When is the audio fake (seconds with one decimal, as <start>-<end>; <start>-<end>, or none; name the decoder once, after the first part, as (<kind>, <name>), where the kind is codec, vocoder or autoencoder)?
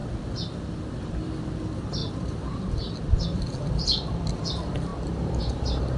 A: none